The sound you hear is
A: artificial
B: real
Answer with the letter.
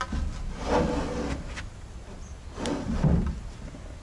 B